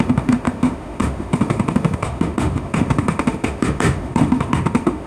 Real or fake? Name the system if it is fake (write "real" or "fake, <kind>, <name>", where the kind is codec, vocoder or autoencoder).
fake, autoencoder, DAC-VAE